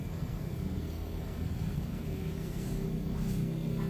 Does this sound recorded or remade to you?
remade